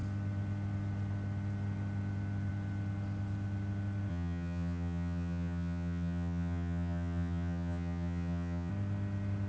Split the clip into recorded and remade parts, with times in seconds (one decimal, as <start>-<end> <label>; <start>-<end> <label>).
0.0-4.1 recorded; 4.1-8.7 remade; 8.7-9.5 recorded